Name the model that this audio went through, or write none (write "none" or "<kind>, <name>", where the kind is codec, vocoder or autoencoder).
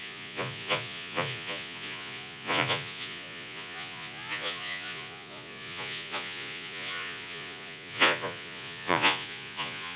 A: vocoder, Vocos